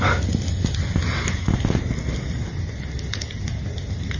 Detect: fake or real real